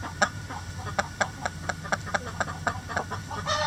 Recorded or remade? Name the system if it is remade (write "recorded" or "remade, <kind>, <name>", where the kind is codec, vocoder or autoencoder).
recorded